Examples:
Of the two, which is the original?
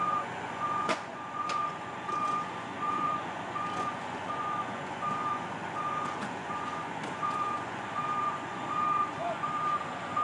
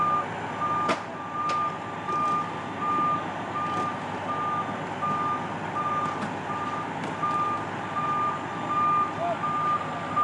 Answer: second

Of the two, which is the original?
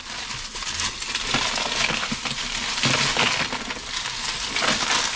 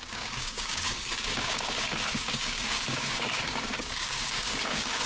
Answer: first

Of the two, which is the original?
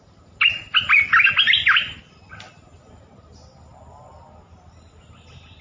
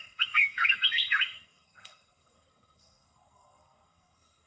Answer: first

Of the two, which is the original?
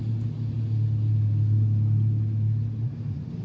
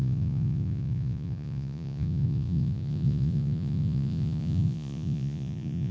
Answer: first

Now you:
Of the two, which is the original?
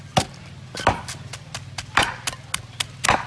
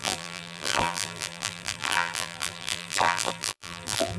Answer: first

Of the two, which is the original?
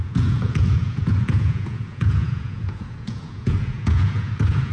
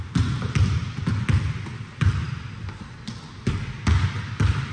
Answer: second